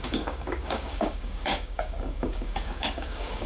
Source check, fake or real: fake